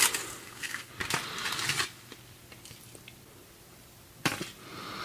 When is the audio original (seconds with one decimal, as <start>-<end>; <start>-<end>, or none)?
0.0-0.4; 0.9-5.0